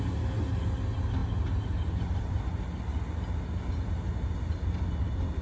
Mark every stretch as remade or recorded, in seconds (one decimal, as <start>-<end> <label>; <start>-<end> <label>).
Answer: 0.0-5.4 recorded

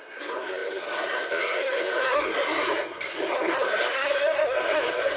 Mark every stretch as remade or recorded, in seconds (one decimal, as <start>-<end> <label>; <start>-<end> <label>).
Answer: 0.0-5.2 remade